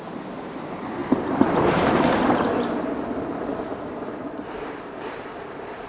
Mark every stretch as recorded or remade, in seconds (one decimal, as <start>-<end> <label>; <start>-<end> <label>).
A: 0.0-1.0 remade; 1.0-1.5 recorded; 1.5-5.9 remade